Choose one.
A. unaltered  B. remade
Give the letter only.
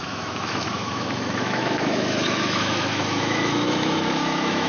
B